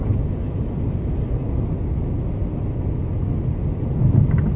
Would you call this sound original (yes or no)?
yes